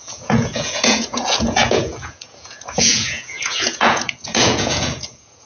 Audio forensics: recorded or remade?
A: remade